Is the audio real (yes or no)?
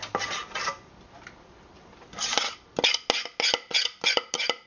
yes